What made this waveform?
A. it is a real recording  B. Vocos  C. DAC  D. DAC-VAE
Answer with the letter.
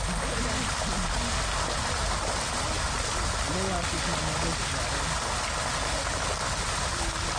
A